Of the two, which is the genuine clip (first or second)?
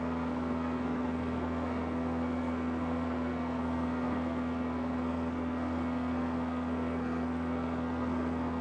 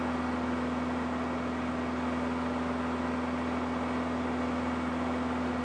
second